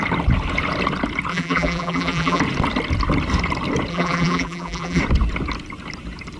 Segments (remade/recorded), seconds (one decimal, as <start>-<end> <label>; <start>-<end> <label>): 0.0-1.3 recorded; 1.3-2.4 remade; 2.4-3.9 recorded; 3.9-5.0 remade; 5.0-6.4 recorded

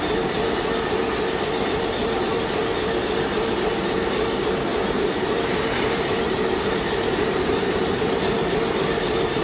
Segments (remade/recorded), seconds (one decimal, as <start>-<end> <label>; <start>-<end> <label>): 0.0-2.0 recorded; 2.0-2.6 remade; 2.6-4.7 recorded; 4.7-8.2 remade; 8.2-9.4 recorded

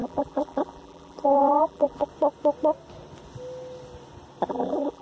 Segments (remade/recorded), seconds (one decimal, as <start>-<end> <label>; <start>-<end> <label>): 0.0-2.1 remade; 2.1-4.5 recorded; 4.5-5.0 remade

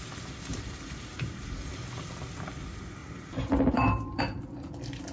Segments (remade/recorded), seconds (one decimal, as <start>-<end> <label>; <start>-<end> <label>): 0.0-0.5 recorded; 0.5-1.7 remade; 1.7-3.0 recorded; 3.0-4.2 remade; 4.2-5.1 recorded

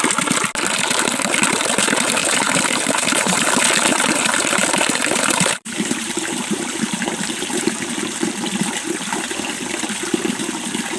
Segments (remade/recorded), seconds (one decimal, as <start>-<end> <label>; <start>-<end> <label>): 0.0-2.2 recorded; 2.2-3.5 remade; 3.5-3.9 recorded; 3.9-7.9 remade; 7.9-11.0 recorded